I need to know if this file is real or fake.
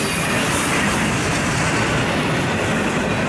real